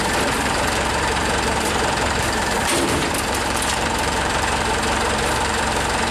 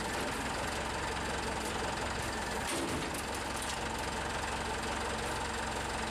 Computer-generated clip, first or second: first